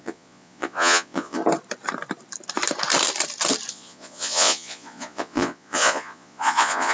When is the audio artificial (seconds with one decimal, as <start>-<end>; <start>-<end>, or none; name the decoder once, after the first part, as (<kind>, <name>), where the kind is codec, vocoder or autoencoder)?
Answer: 0.0-1.4 (vocoder, Vocos); 3.7-6.9